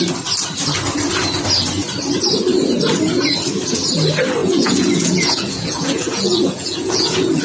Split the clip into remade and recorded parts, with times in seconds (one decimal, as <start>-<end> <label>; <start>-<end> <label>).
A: 0.0-4.4 recorded; 4.4-7.4 remade